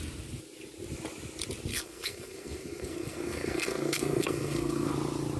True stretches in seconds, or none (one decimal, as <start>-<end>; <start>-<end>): 0.0-1.7; 4.9-5.4